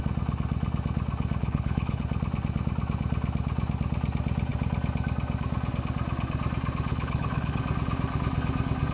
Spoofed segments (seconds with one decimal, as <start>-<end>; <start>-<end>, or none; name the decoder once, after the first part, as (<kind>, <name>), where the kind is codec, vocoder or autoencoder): 1.4-2.0 (codec, HILCodec); 6.9-7.6